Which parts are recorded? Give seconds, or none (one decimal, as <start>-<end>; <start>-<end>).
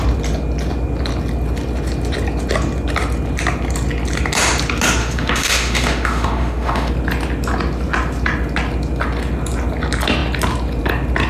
0.0-5.0; 6.9-11.3